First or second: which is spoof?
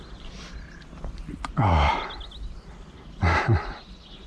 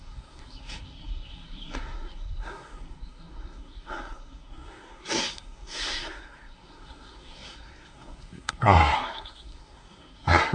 second